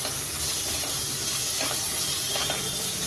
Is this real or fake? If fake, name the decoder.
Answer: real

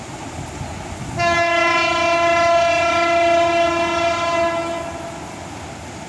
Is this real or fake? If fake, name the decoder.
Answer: real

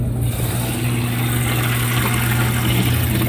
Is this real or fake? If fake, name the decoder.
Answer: real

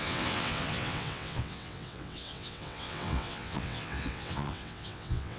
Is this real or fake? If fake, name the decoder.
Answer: fake, vocoder, WaveNeXt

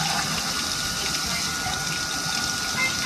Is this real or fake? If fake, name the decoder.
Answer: real